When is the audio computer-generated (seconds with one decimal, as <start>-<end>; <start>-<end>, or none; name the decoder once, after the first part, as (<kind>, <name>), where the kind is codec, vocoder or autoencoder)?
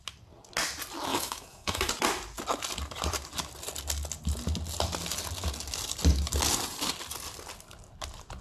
1.1-1.9 (autoencoder, DAC-VAE)